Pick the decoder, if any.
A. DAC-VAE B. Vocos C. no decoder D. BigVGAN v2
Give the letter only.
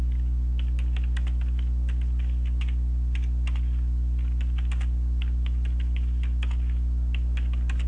C